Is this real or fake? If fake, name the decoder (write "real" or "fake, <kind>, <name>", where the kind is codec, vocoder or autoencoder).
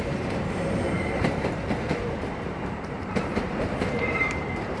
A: fake, vocoder, BigVGAN v2